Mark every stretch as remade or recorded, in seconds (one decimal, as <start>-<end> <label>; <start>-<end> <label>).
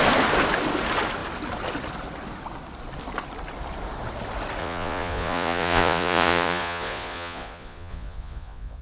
0.0-4.6 recorded; 4.6-8.8 remade